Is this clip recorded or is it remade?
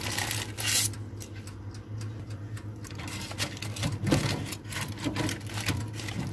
recorded